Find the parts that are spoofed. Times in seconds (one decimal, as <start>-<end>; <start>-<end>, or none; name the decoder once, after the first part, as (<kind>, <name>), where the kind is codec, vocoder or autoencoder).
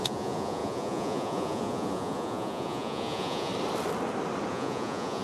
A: 0.0-3.5 (vocoder, Vocos); 4.5-5.2